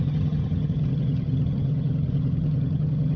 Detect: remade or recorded remade